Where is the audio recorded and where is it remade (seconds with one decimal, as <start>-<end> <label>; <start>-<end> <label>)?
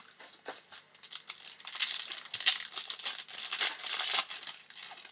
0.0-5.1 recorded